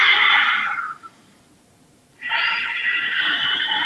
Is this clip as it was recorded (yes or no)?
no